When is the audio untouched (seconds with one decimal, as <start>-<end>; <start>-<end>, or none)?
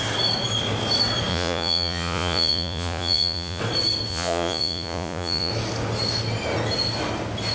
0.0-1.3; 3.6-4.1; 5.5-7.5